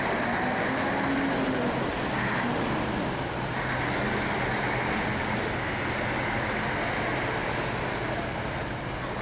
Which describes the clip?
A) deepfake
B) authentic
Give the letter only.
B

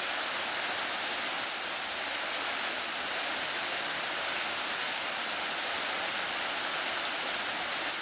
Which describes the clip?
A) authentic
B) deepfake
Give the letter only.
A